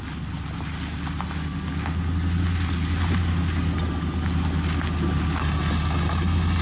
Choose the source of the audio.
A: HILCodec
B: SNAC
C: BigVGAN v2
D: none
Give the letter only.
D